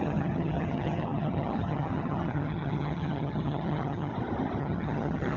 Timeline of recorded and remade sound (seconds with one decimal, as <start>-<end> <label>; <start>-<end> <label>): 0.0-4.1 remade; 4.1-4.6 recorded; 4.6-5.4 remade